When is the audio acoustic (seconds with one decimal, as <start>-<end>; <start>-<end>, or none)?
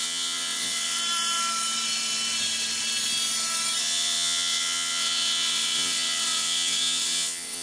1.0-3.8